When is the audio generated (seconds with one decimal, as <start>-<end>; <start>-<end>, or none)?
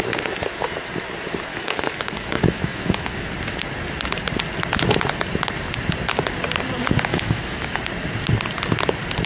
1.5-3.3; 7.1-7.8